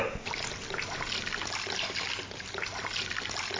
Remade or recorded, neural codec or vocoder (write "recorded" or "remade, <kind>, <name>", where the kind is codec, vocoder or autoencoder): recorded